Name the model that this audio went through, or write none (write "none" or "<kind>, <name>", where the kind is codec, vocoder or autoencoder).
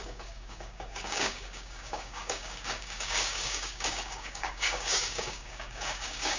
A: codec, DAC